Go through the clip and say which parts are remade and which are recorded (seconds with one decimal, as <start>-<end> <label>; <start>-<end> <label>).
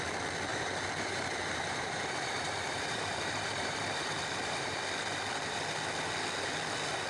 0.0-0.5 recorded; 0.5-4.8 remade; 4.8-7.1 recorded